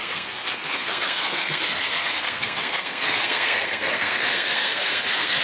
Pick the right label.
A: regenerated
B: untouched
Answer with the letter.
A